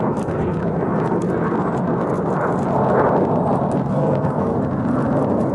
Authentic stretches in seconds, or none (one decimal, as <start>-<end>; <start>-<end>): 0.6-3.9; 4.5-5.5